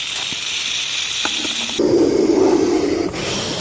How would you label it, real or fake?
real